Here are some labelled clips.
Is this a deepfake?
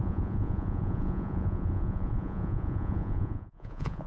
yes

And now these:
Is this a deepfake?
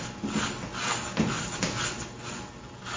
no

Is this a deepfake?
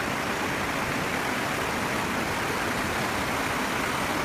no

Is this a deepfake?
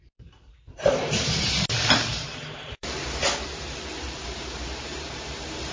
yes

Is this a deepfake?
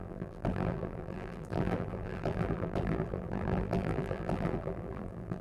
yes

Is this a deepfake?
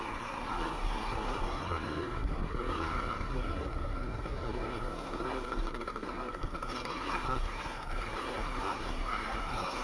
yes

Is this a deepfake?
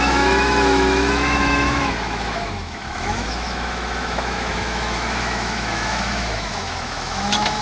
yes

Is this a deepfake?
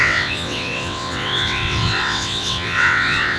yes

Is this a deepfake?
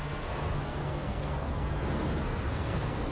yes